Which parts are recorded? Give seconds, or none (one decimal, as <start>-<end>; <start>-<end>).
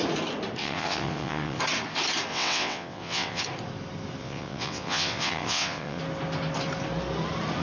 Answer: 0.0-0.6; 1.6-2.3; 3.4-4.2; 6.0-7.6